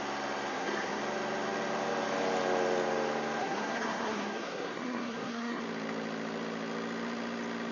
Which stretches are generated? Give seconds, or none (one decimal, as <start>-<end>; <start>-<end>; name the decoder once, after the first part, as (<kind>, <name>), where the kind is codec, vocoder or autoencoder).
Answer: 0.5-1.0 (codec, SNAC); 3.4-5.6